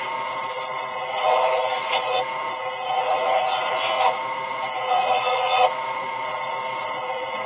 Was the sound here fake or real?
fake